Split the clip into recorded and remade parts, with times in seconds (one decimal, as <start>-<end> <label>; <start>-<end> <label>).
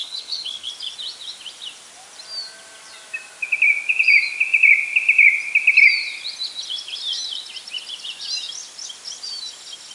0.0-0.7 remade; 0.7-9.9 recorded